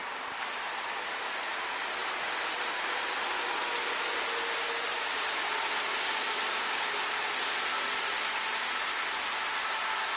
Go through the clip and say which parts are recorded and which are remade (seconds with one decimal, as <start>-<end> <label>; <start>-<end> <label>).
0.0-10.2 recorded